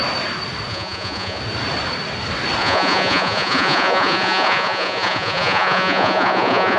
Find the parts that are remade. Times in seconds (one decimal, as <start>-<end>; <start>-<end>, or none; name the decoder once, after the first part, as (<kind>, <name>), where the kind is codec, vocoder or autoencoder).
0.7-1.4 (vocoder, Vocos); 2.6-6.8